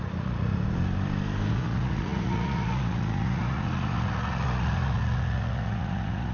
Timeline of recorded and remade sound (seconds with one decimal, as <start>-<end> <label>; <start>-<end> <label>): 0.0-0.5 remade; 0.5-1.5 recorded; 1.5-6.3 remade